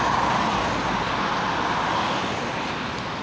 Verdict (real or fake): real